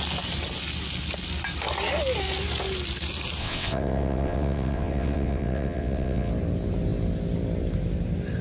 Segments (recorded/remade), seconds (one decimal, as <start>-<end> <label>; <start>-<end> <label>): 0.0-3.4 recorded; 3.4-6.3 remade; 6.3-8.4 recorded